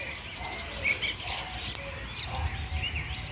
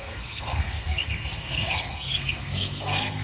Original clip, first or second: first